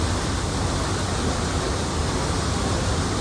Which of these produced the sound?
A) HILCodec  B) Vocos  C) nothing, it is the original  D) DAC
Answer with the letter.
C